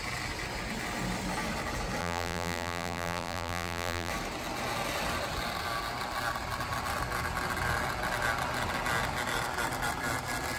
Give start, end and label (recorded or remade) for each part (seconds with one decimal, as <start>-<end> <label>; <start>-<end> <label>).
0.0-2.0 recorded; 2.0-4.1 remade; 4.1-10.6 recorded